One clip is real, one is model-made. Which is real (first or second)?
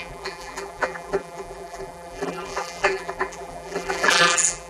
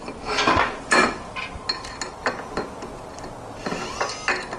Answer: second